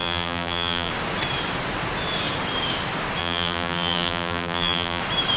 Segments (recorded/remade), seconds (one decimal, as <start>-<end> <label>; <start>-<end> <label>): 0.0-0.9 remade; 0.9-3.2 recorded; 3.2-5.0 remade; 5.0-5.4 recorded